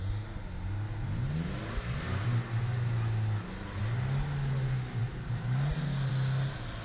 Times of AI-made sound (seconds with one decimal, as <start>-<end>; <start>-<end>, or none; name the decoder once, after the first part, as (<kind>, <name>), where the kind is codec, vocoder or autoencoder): none